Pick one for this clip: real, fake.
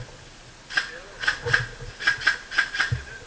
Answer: real